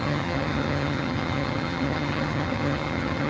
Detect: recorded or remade remade